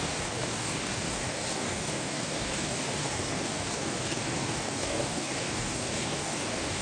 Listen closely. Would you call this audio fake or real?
fake